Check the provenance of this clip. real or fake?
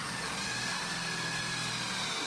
real